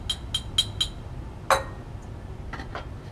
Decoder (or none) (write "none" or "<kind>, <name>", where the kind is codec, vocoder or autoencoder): none